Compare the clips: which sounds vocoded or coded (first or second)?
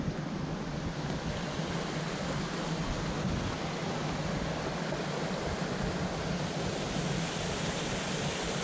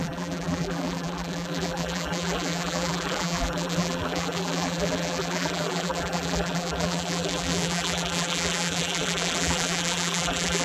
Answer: second